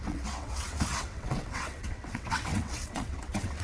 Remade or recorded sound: remade